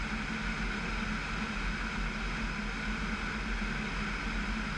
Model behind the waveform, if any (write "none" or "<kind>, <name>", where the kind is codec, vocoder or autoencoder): none